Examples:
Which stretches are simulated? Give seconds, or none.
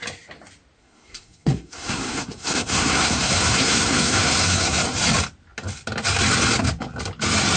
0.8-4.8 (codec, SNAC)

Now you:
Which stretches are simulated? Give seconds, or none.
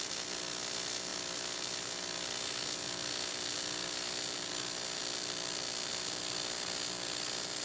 none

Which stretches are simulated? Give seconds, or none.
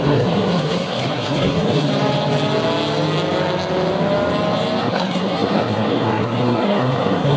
0.0-1.9 (codec, SNAC); 4.8-7.4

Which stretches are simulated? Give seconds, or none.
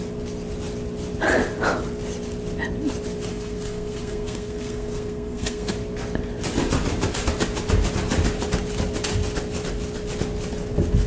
3.3-5.7 (codec, SNAC)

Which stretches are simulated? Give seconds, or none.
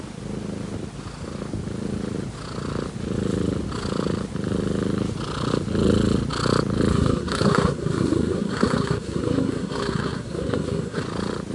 6.9-11.0 (codec, SNAC)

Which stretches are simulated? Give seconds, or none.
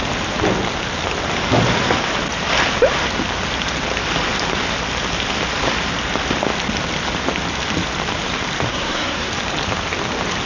8.7-9.3 (codec, SNAC)